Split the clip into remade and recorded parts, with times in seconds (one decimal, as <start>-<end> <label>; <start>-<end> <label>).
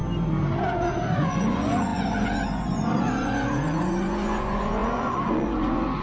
0.0-0.6 recorded; 0.6-6.0 remade